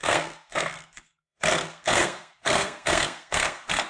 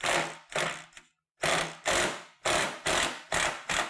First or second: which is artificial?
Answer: first